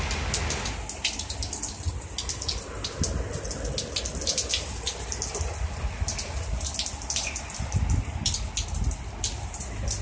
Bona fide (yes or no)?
yes